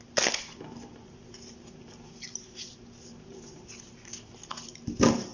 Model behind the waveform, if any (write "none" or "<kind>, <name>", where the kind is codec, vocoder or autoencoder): none